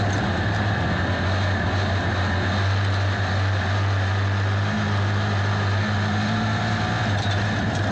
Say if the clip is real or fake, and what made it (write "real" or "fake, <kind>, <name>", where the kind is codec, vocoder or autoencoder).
real